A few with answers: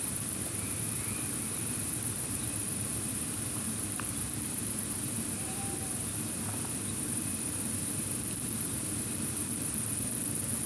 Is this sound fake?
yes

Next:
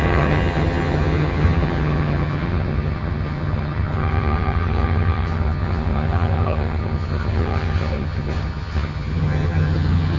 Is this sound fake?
yes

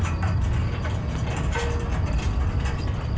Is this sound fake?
no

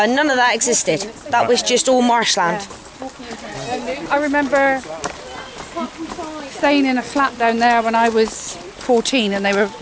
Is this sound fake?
no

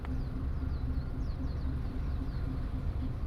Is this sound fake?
no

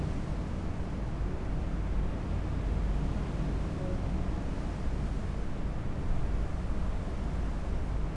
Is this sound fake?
no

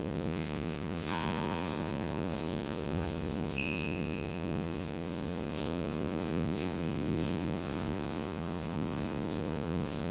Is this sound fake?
yes